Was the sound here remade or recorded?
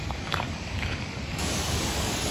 remade